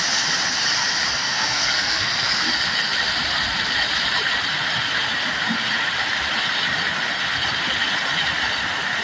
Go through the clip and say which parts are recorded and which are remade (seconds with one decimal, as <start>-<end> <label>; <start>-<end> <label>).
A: 0.0-1.1 recorded; 1.1-2.4 remade; 2.4-9.0 recorded